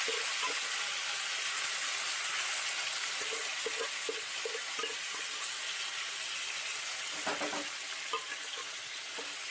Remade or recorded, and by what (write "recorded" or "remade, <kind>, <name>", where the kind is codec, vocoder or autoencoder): recorded